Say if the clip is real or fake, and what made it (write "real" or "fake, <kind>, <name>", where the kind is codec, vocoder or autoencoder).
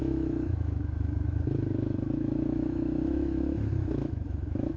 fake, autoencoder, DAC-VAE